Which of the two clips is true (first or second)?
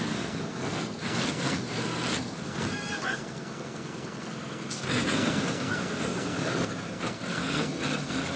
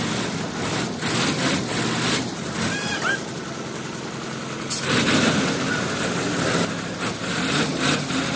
second